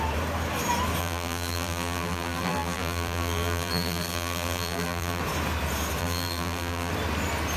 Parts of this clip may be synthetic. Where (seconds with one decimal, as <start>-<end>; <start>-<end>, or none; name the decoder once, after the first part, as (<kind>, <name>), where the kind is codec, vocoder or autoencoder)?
1.0-5.2 (vocoder, BigVGAN v2); 6.0-6.9